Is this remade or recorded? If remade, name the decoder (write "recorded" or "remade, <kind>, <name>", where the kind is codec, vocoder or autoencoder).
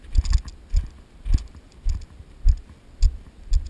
recorded